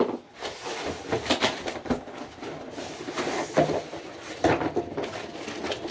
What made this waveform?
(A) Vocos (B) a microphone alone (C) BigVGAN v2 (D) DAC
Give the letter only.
B